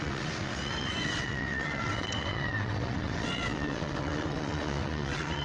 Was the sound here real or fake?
fake